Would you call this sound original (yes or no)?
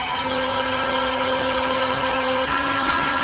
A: no